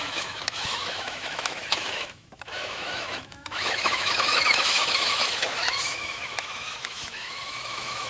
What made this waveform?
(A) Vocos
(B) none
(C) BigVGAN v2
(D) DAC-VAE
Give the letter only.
D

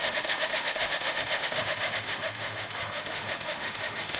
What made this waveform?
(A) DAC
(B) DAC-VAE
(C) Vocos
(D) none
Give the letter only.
B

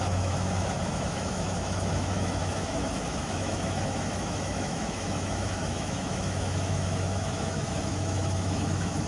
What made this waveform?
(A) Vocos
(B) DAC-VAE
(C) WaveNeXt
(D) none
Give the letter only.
B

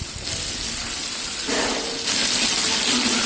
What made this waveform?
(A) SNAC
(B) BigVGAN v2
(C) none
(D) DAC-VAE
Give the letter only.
C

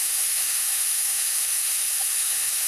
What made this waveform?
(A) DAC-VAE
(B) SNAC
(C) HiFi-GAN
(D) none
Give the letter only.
A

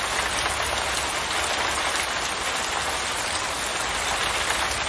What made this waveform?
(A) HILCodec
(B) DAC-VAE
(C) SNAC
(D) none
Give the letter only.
D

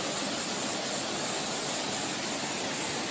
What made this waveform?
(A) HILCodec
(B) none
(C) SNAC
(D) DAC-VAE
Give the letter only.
B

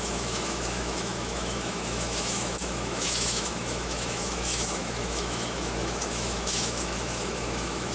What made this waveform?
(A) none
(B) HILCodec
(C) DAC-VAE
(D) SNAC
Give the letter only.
C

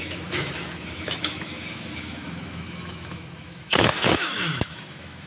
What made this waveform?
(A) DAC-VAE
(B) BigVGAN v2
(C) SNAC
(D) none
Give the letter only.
A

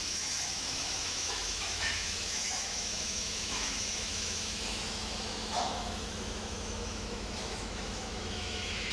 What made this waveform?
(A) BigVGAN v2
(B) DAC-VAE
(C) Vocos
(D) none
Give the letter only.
B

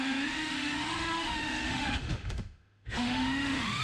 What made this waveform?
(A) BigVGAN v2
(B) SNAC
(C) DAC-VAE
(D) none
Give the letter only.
C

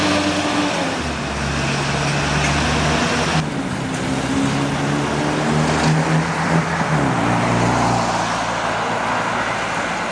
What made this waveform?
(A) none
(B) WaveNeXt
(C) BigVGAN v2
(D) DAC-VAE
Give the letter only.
A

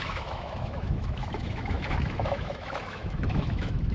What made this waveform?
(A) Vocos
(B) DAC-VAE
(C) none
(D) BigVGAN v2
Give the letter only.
B